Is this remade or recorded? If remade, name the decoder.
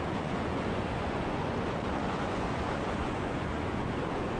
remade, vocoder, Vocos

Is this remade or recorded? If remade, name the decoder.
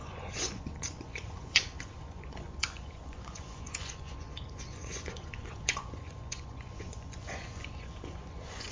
remade, vocoder, Vocos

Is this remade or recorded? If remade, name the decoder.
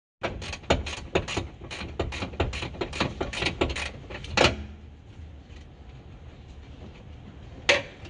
recorded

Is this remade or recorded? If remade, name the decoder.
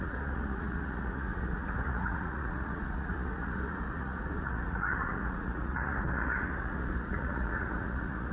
remade, vocoder, Vocos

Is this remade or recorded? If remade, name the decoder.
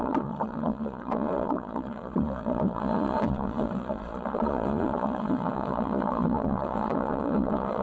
remade, vocoder, Vocos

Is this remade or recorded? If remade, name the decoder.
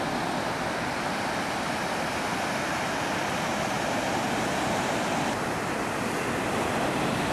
recorded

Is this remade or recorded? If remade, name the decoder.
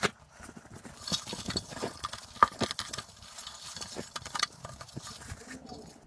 recorded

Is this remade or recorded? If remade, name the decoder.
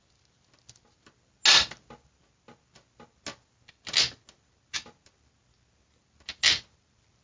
recorded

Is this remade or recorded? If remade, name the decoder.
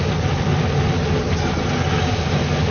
recorded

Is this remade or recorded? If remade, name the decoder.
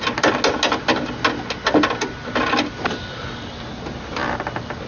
recorded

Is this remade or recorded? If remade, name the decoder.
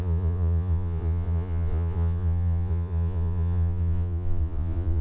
remade, vocoder, Vocos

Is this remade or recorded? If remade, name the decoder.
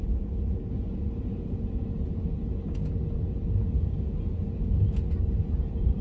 remade, vocoder, Vocos